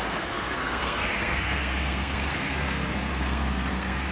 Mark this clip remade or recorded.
remade